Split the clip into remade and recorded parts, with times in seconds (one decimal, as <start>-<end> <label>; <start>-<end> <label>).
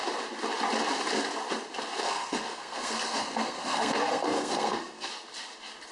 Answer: 0.0-2.0 recorded; 2.0-5.1 remade; 5.1-5.9 recorded